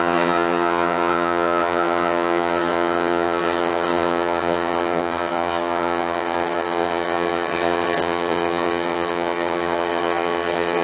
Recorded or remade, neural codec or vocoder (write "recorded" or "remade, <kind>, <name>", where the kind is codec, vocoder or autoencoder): remade, vocoder, HiFi-GAN